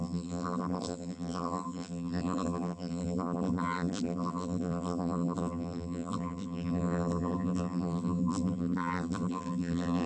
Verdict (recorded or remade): remade